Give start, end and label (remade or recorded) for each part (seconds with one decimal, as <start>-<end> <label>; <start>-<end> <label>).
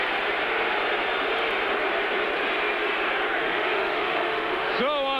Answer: 0.0-3.4 recorded; 3.4-4.7 remade; 4.7-5.2 recorded